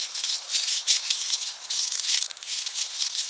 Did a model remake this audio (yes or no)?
yes